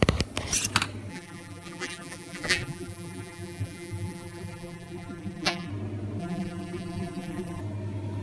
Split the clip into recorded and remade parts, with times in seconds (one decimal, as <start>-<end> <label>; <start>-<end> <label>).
0.0-1.1 recorded; 1.1-5.7 remade; 5.7-6.2 recorded; 6.2-7.6 remade; 7.6-8.2 recorded